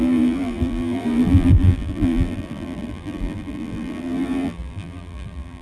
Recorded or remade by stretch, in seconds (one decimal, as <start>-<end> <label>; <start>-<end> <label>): 0.0-5.6 remade